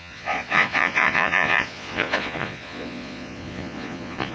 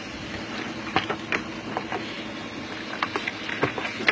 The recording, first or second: second